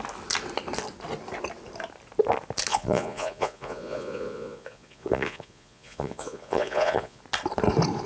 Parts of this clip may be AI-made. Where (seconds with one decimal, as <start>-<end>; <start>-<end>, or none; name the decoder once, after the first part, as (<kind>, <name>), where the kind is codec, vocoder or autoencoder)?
2.7-7.2 (vocoder, Vocos)

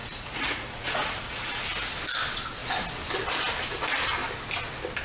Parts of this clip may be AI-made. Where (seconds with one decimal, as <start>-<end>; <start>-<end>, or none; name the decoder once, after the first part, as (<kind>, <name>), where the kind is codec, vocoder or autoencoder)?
0.0-2.0 (vocoder, Vocos)

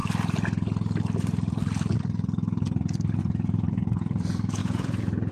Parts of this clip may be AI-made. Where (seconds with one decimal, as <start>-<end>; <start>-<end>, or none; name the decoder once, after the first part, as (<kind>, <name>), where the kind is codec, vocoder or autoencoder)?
3.2-5.3 (vocoder, Vocos)